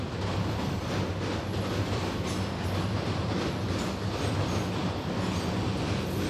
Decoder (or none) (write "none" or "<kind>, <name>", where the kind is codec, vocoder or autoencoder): none